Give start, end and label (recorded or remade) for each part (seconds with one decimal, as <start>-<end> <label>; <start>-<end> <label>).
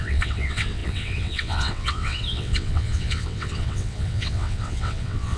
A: 0.0-5.4 remade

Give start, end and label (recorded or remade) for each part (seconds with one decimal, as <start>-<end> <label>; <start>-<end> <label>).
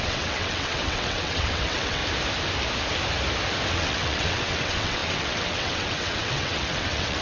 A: 0.0-2.0 remade; 2.0-3.7 recorded; 3.7-7.2 remade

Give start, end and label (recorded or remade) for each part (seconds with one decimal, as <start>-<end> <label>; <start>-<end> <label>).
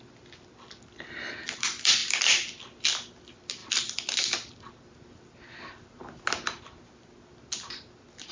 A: 0.0-8.3 recorded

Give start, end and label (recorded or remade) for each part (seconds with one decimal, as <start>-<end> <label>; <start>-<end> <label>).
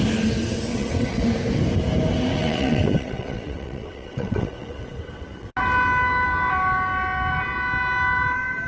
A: 0.0-0.7 recorded; 0.7-1.2 remade; 1.2-2.3 recorded; 2.3-5.5 remade; 5.5-8.7 recorded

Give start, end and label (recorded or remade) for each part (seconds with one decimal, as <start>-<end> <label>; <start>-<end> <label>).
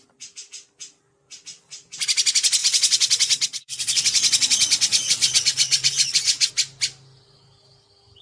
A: 0.0-2.6 recorded; 2.6-6.5 remade; 6.5-8.2 recorded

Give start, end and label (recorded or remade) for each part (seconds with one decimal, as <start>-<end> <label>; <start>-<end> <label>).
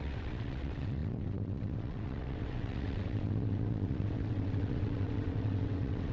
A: 0.0-6.1 remade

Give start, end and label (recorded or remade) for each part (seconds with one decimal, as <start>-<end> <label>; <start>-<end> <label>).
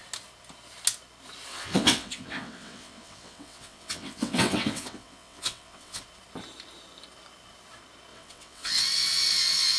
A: 0.0-1.5 recorded; 1.5-6.0 remade; 6.0-8.1 recorded; 8.1-9.8 remade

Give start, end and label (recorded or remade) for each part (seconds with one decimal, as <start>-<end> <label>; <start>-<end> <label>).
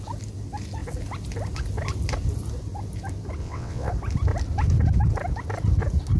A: 0.0-3.4 recorded; 3.4-3.9 remade; 3.9-6.2 recorded